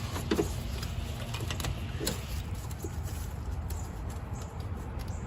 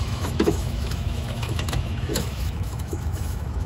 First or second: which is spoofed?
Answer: second